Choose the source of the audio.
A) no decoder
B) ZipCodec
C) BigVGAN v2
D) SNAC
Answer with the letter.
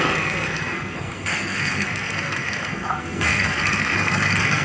D